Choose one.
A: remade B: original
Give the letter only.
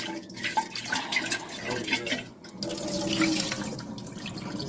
B